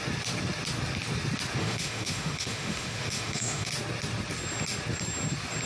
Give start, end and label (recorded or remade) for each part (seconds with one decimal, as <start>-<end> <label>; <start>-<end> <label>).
0.0-1.6 recorded; 1.6-3.7 remade; 3.7-5.7 recorded